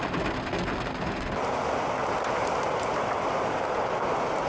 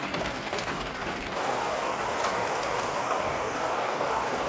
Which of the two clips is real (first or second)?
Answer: first